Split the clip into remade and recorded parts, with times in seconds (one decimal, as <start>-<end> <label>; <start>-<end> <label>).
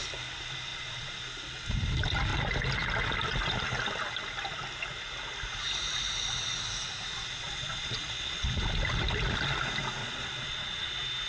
0.0-0.7 recorded; 0.7-1.2 remade; 1.2-7.1 recorded; 7.1-8.6 remade; 8.6-10.0 recorded; 10.0-10.9 remade; 10.9-11.3 recorded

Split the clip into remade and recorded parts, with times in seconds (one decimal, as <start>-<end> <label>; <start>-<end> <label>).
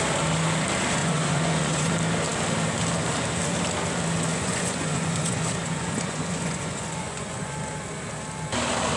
0.0-1.0 recorded; 1.0-1.9 remade; 1.9-4.3 recorded; 4.3-7.6 remade; 7.6-9.0 recorded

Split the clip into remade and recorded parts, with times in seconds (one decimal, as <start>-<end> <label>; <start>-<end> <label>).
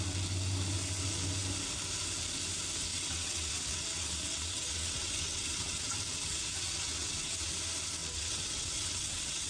0.0-2.9 recorded; 2.9-7.5 remade; 7.5-8.0 recorded; 8.0-9.5 remade